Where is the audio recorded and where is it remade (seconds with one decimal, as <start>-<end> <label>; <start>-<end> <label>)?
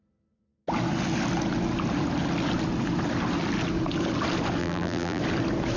0.0-4.6 recorded; 4.6-5.2 remade; 5.2-5.8 recorded